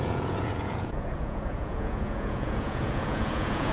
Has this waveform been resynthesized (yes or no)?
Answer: yes